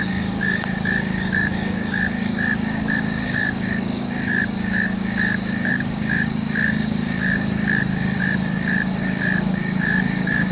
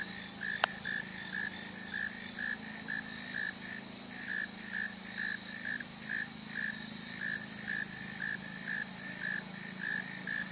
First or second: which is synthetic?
first